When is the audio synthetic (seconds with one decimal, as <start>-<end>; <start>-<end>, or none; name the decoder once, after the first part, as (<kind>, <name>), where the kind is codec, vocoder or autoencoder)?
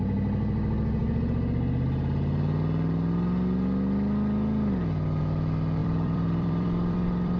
5.8-7.4 (vocoder, BigVGAN v2)